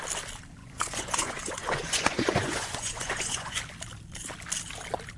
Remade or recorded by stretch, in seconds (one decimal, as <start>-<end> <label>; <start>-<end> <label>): 0.0-0.6 recorded; 0.6-3.6 remade; 3.6-5.2 recorded